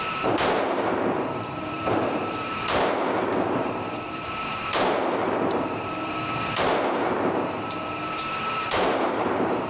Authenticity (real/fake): fake